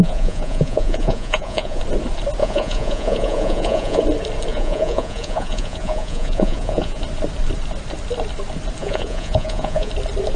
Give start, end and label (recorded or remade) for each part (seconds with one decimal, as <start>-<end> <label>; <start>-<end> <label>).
0.0-1.8 remade; 1.8-2.4 recorded; 2.4-4.0 remade; 4.0-4.5 recorded; 4.5-7.0 remade; 7.0-8.8 recorded; 8.8-9.9 remade; 9.9-10.4 recorded